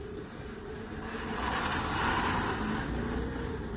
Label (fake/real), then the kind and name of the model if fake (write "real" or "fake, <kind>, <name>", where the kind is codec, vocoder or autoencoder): real